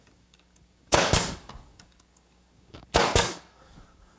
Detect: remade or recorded remade